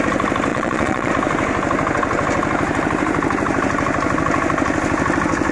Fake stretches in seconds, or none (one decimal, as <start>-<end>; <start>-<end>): 0.5-1.1

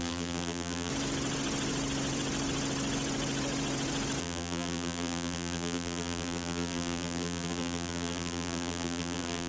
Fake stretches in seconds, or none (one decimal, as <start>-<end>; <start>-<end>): 0.0-0.9; 4.2-9.5

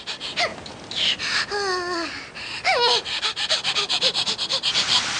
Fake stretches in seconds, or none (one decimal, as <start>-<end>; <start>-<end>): none

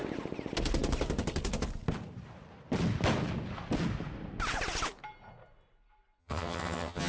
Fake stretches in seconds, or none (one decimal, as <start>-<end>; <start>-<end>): 6.2-7.1

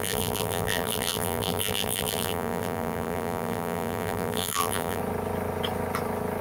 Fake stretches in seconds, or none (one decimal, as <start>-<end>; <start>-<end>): 0.0-5.0